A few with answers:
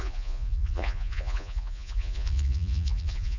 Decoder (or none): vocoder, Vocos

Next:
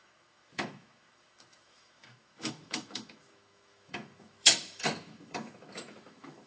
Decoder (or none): autoencoder, DAC-VAE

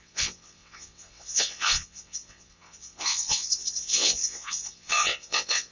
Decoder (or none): vocoder, WaveNeXt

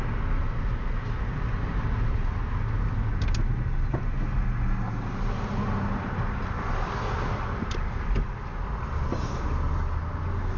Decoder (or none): none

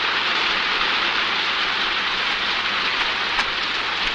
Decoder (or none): none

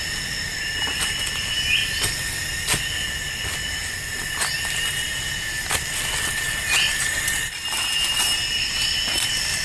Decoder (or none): none